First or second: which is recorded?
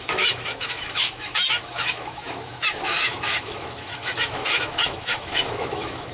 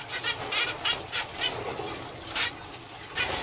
second